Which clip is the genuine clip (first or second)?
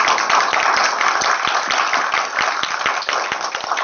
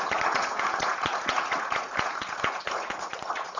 first